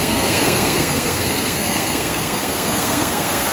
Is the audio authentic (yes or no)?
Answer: no